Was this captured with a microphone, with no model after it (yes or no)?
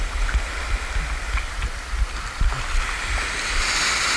yes